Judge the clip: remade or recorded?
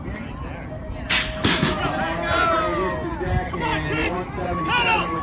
recorded